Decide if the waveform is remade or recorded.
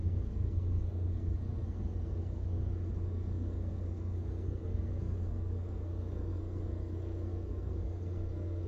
remade